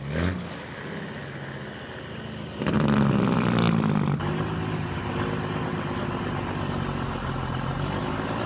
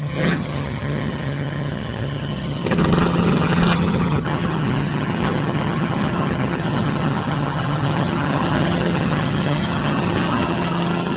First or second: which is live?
first